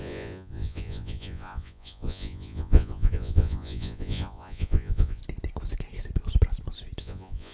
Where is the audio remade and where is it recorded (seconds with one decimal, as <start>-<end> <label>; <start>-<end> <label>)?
0.0-5.2 remade; 5.2-7.0 recorded; 7.0-7.5 remade